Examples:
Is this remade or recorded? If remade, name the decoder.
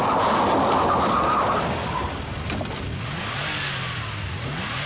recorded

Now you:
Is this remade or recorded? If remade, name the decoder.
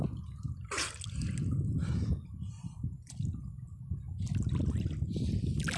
recorded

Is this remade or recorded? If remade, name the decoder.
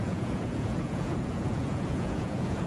remade, vocoder, Vocos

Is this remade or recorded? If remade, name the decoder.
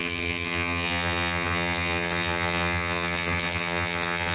remade, vocoder, HiFi-GAN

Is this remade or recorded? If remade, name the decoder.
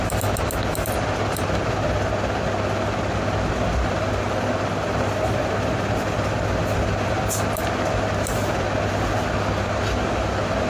recorded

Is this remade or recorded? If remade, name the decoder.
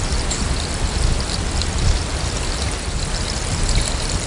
recorded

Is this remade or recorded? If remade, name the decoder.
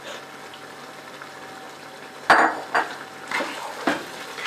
recorded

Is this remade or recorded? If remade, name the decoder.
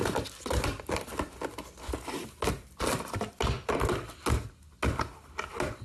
recorded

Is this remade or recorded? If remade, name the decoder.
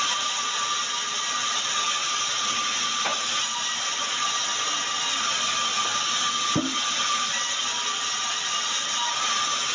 recorded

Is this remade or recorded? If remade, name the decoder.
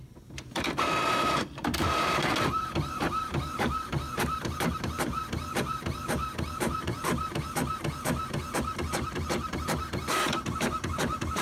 remade, vocoder, BigVGAN v2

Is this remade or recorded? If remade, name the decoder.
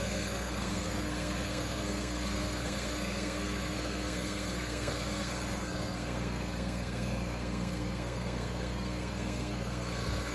remade, codec, SNAC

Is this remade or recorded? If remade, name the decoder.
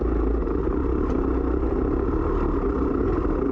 recorded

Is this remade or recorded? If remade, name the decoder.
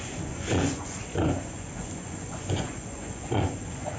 remade, vocoder, Vocos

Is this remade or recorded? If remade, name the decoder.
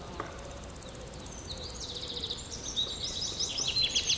recorded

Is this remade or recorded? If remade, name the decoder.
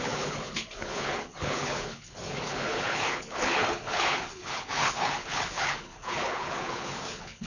remade, codec, HILCodec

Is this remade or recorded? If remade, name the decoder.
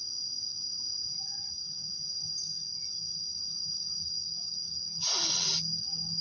recorded